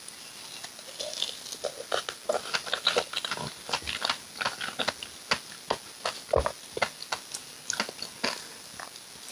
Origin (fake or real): real